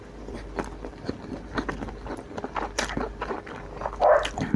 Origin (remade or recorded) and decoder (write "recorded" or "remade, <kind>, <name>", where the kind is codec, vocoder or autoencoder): remade, vocoder, BigVGAN v2